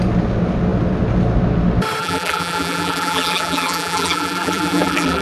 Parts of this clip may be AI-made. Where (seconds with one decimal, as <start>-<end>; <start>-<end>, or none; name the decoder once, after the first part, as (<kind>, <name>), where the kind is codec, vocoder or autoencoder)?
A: 2.0-5.2 (vocoder, BigVGAN v2)